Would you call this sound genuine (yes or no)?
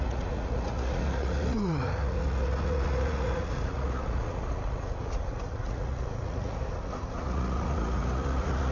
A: no